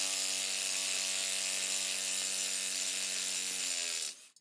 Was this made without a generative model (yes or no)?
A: yes